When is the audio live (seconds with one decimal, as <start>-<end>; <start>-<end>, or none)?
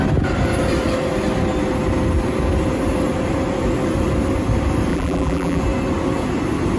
0.0-4.9; 5.6-6.8